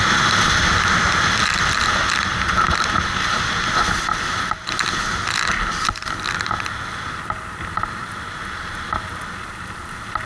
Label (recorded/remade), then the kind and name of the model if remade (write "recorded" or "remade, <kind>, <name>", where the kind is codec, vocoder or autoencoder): recorded